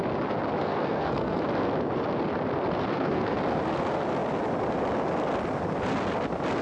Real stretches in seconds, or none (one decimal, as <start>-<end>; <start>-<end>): 0.0-0.6; 1.4-2.9; 3.4-6.6

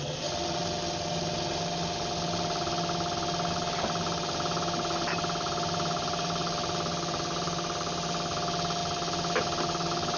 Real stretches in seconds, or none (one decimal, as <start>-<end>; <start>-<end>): 0.0-10.2

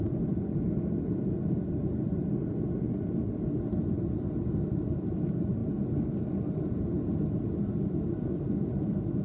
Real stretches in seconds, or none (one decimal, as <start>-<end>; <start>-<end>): 0.0-9.2

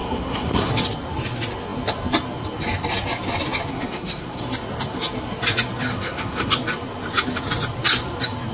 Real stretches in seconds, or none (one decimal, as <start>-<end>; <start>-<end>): 0.7-3.7; 4.4-5.9; 6.5-8.5

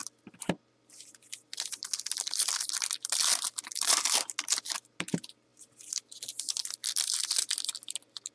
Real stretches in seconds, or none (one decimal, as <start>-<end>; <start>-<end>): 0.0-8.3